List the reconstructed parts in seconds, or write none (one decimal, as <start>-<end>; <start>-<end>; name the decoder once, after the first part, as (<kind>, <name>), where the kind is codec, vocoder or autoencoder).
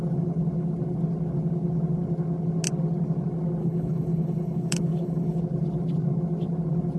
3.6-5.4 (codec, HILCodec)